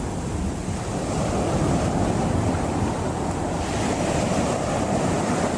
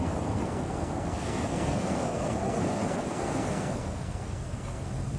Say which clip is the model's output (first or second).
second